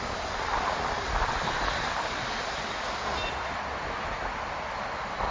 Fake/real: real